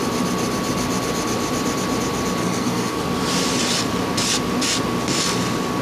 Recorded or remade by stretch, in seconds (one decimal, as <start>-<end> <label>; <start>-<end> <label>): 0.0-2.4 recorded; 2.4-3.0 remade; 3.0-5.8 recorded